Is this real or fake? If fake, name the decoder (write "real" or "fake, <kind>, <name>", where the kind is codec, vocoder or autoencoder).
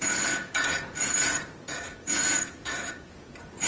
fake, vocoder, Vocos